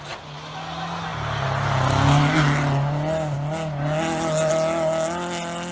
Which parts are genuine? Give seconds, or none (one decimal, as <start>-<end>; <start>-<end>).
0.0-5.7